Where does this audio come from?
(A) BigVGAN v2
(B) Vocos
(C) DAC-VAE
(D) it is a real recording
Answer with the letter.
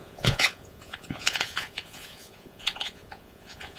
B